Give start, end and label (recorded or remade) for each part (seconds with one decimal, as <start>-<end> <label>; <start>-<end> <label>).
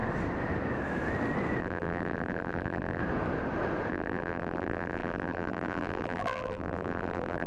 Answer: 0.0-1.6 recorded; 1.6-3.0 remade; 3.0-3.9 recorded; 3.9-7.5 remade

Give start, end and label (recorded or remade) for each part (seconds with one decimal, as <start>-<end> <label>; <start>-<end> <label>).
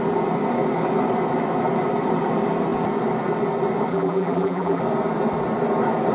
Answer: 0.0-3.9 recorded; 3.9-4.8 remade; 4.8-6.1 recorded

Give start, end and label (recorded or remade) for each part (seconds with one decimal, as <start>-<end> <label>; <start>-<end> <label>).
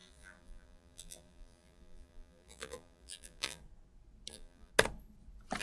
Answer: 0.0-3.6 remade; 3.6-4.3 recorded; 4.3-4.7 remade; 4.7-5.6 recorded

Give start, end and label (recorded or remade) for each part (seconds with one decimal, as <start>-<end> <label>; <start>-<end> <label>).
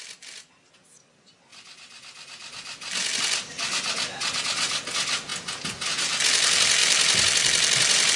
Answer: 0.0-6.8 recorded; 6.8-8.2 remade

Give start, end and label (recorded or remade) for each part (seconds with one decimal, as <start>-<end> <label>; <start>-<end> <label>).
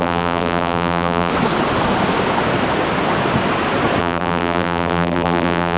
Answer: 0.0-1.3 remade; 1.3-4.0 recorded; 4.0-5.8 remade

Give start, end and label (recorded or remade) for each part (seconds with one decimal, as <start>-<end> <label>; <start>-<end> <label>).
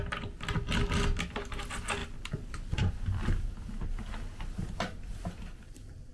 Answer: 0.0-2.0 recorded; 2.0-3.7 remade; 3.7-5.1 recorded; 5.1-6.1 remade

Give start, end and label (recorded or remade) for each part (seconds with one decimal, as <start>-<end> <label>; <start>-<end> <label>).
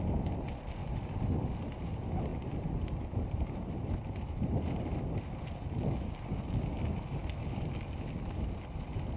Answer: 0.0-2.3 recorded; 2.3-5.9 remade; 5.9-9.2 recorded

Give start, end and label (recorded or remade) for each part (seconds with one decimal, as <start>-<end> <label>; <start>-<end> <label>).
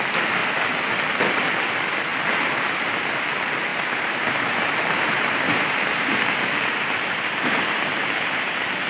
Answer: 0.0-3.7 recorded; 3.7-8.5 remade; 8.5-8.9 recorded